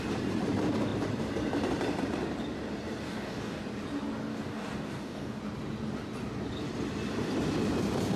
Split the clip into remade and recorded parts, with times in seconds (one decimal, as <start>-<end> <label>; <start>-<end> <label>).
0.0-3.0 recorded; 3.0-3.6 remade; 3.6-4.3 recorded; 4.3-5.4 remade; 5.4-8.2 recorded